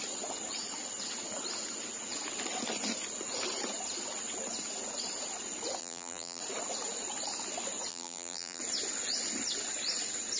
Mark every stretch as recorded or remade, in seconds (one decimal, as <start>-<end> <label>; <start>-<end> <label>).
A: 0.0-5.8 recorded; 5.8-6.4 remade; 6.4-7.9 recorded; 7.9-8.6 remade; 8.6-10.4 recorded